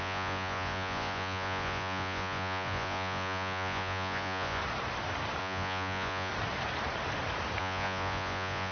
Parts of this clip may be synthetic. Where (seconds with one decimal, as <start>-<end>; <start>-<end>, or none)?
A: 0.0-4.6; 5.4-6.3; 7.6-8.7